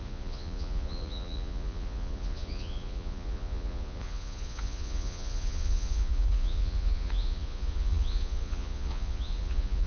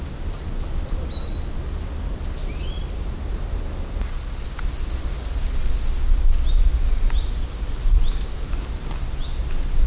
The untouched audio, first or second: second